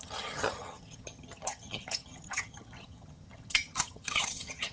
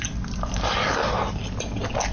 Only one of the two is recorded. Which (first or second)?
second